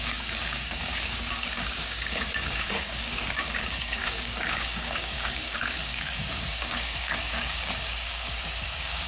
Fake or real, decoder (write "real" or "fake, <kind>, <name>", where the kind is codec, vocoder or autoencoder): fake, codec, DAC